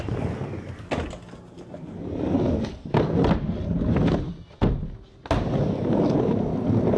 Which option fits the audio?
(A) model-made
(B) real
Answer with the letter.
B